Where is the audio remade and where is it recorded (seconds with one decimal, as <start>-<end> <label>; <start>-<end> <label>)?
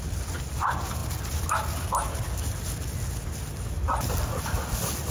0.0-5.1 recorded